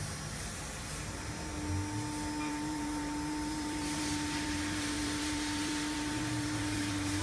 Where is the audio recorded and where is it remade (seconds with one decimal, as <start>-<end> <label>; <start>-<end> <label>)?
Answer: 0.0-1.5 remade; 1.5-2.4 recorded; 2.4-7.2 remade